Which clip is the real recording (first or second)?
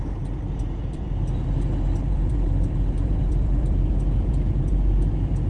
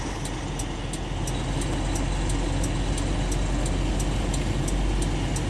second